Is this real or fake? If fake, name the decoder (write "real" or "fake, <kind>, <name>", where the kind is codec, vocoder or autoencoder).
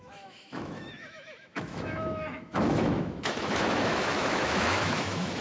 fake, autoencoder, DAC-VAE